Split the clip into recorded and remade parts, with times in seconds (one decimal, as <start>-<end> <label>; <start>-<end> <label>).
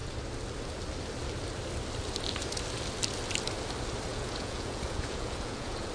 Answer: 0.0-4.1 recorded; 4.1-5.9 remade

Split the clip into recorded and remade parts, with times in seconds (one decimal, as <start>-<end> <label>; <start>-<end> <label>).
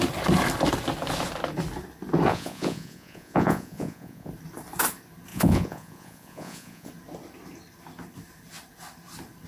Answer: 0.0-2.3 recorded; 2.3-4.3 remade; 4.3-5.3 recorded; 5.3-6.9 remade; 6.9-9.5 recorded